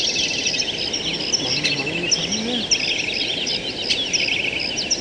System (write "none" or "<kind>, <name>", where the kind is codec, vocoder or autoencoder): none